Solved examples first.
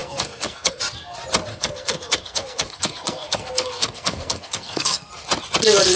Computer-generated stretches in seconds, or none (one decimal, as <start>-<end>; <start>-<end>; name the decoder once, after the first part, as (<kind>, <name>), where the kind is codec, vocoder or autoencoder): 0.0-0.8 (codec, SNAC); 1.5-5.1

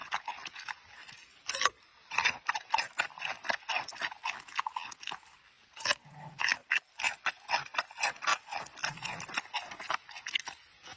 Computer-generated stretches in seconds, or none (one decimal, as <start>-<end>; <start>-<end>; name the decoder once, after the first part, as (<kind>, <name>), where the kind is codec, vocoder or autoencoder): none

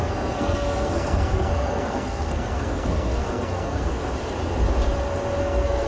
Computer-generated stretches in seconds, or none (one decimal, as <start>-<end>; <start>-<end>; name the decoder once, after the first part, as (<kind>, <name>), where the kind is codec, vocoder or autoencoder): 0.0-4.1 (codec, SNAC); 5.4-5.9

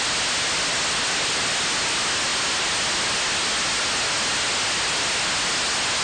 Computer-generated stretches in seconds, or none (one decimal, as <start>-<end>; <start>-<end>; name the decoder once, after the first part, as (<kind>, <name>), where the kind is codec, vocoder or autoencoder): none

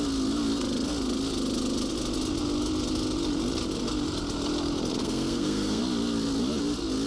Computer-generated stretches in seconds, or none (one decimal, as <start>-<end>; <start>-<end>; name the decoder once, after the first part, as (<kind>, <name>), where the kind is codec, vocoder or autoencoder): 5.0-5.8 (codec, SNAC)

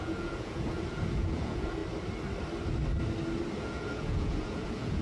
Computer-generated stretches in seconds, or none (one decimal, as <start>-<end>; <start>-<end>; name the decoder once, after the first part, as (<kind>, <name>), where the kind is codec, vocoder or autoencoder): 0.0-1.8 (vocoder, Vocos); 3.5-5.0